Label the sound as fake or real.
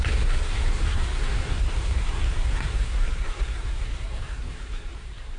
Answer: fake